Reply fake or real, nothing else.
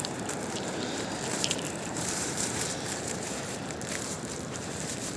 fake